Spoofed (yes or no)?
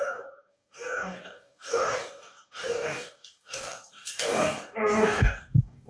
yes